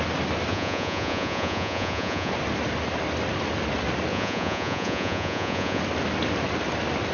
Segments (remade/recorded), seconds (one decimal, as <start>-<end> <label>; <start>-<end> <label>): 0.0-0.5 recorded; 0.5-2.3 remade; 2.3-4.1 recorded; 4.1-5.8 remade; 5.8-7.1 recorded